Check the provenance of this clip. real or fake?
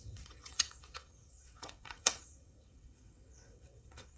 fake